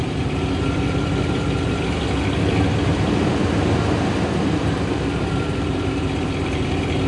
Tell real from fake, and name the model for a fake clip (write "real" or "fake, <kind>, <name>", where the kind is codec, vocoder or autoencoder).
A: fake, vocoder, BigVGAN v2